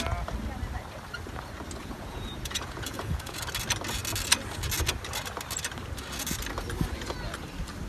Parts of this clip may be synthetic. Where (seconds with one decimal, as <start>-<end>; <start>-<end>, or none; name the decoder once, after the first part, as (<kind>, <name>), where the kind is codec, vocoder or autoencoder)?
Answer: 1.8-3.4 (vocoder, Vocos)